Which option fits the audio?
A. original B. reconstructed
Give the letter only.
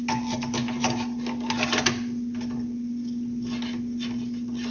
A